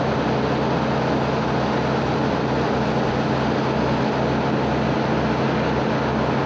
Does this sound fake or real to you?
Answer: real